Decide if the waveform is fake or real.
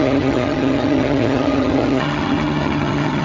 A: fake